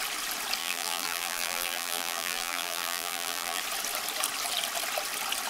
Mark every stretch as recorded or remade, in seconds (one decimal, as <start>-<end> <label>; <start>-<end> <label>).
0.0-0.6 recorded; 0.6-3.6 remade; 3.6-5.5 recorded